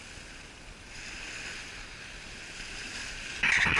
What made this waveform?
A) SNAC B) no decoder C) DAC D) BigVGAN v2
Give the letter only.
B